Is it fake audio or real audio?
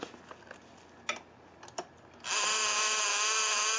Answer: real